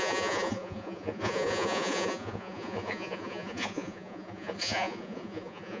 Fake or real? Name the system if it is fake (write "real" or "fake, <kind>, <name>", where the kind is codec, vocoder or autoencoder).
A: fake, vocoder, Vocos